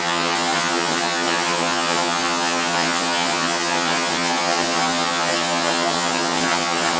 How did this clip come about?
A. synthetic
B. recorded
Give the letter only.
A